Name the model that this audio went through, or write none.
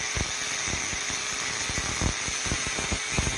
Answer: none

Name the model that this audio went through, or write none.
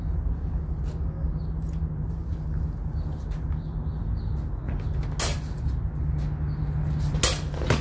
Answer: none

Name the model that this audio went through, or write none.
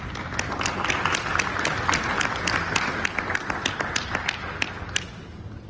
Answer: none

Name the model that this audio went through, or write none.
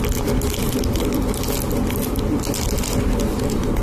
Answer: none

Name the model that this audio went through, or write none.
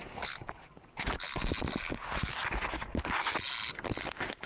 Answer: none